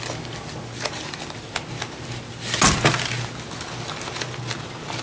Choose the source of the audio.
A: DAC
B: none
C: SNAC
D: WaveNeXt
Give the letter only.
B